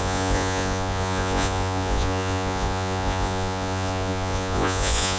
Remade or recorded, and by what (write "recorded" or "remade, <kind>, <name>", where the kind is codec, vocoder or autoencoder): remade, vocoder, Vocos